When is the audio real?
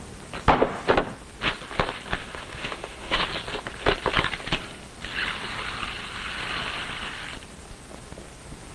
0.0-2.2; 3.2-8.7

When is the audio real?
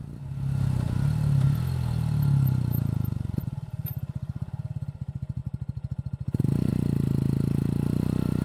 0.0-8.4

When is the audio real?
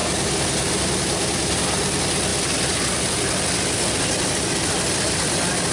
0.0-5.7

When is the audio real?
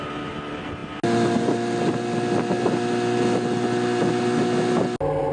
0.0-5.3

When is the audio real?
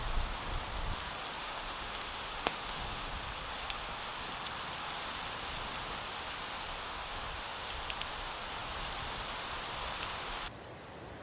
0.0-1.4; 3.1-7.1; 7.7-11.2